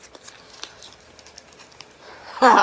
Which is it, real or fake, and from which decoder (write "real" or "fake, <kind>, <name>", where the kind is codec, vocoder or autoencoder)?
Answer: real